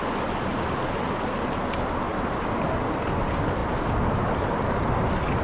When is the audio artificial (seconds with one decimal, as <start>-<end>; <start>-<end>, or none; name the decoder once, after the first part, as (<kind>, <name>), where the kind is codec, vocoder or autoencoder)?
2.1-2.8 (vocoder, BigVGAN v2); 3.6-4.1